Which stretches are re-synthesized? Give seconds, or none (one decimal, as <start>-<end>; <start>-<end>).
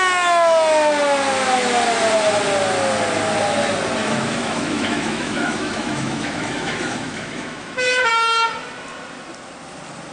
4.0-8.1